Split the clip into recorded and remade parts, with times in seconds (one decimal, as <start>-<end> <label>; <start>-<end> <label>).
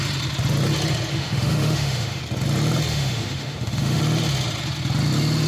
0.0-1.1 recorded; 1.1-2.2 remade; 2.2-2.9 recorded; 2.9-4.0 remade; 4.0-5.5 recorded